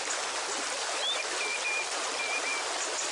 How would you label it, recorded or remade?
recorded